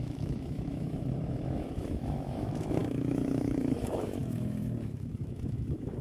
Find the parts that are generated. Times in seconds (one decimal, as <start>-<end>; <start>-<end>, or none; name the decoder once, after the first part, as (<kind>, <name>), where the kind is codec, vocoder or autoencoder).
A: 0.0-6.0 (autoencoder, DAC-VAE)